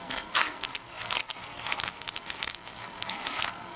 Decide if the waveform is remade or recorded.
remade